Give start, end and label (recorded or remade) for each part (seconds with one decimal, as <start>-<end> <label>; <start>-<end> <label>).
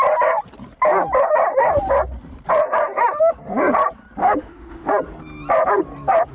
0.0-4.2 recorded; 4.2-4.9 remade; 4.9-6.3 recorded